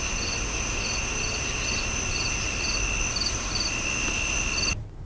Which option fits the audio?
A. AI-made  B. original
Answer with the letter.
B